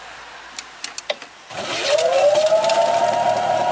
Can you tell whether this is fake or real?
real